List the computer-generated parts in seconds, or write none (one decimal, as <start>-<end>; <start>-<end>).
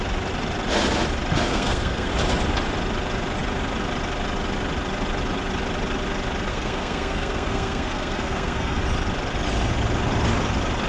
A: 1.5-2.1; 6.5-8.8